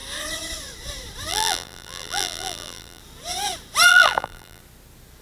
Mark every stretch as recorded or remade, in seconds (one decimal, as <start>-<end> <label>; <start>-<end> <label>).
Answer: 0.0-1.3 recorded; 1.3-3.0 remade; 3.0-3.9 recorded; 3.9-4.6 remade; 4.6-5.2 recorded